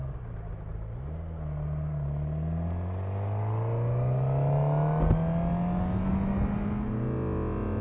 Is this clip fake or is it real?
real